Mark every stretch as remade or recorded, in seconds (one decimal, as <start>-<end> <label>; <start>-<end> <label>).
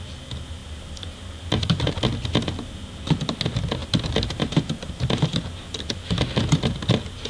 0.0-0.6 recorded; 0.6-2.0 remade; 2.0-3.8 recorded; 3.8-5.9 remade; 5.9-7.3 recorded